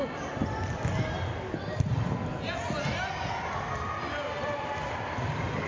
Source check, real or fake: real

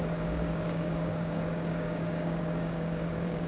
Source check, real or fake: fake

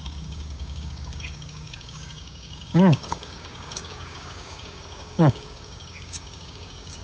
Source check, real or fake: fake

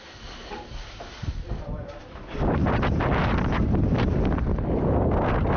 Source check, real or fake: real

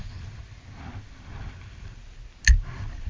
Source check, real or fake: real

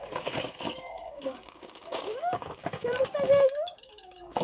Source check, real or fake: fake